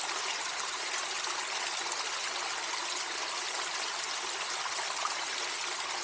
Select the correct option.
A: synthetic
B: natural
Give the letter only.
B